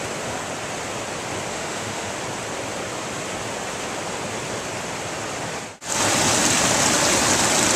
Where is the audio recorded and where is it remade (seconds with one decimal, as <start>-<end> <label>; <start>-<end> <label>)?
0.0-1.5 recorded; 1.5-2.1 remade; 2.1-7.8 recorded